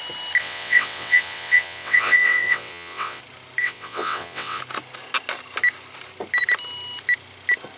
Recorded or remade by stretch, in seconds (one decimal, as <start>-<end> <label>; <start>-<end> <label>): 0.0-0.4 recorded; 0.4-3.2 remade; 3.2-3.6 recorded; 3.6-4.6 remade; 4.6-7.8 recorded